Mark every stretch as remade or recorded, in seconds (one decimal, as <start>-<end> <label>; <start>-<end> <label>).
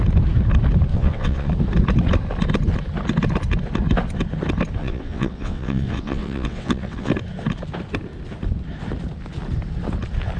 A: 0.0-0.9 recorded; 0.9-1.5 remade; 1.5-4.8 recorded; 4.8-7.1 remade; 7.1-10.4 recorded